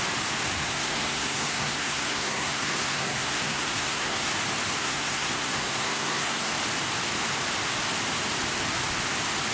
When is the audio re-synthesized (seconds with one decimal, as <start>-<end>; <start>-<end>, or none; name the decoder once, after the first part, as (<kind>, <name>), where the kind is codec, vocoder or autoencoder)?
0.6-4.3 (codec, SNAC); 4.8-6.5